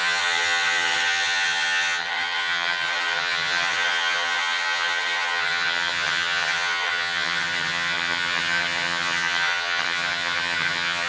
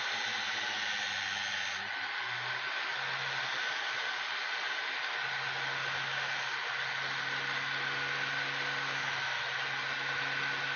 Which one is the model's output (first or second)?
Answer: first